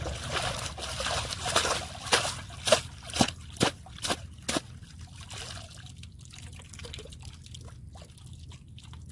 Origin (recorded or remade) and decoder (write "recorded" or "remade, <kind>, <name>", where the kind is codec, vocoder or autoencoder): recorded